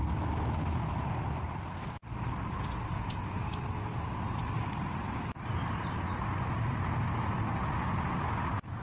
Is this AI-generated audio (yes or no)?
no